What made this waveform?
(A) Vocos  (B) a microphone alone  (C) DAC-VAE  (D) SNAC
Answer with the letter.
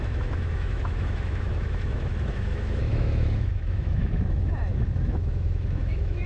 C